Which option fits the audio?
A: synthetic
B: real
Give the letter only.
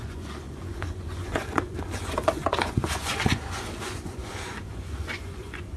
A